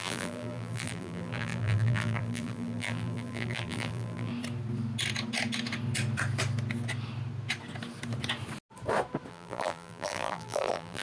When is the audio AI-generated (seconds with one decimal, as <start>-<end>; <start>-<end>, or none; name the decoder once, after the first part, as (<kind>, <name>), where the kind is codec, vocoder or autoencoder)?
0.0-4.3 (vocoder, BigVGAN v2); 9.3-11.0